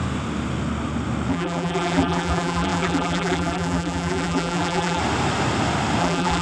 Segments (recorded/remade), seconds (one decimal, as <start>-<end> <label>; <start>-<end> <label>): 0.0-1.3 recorded; 1.3-5.0 remade; 5.0-6.0 recorded; 6.0-6.4 remade